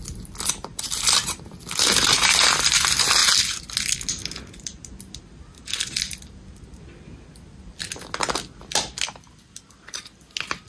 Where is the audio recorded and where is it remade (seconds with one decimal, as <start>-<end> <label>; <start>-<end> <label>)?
0.0-10.7 recorded